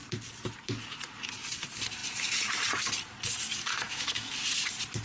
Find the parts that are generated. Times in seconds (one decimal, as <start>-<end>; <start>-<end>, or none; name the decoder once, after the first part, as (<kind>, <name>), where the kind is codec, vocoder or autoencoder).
3.5-4.3 (autoencoder, DAC-VAE)